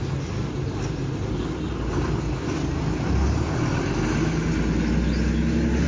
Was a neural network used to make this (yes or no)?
no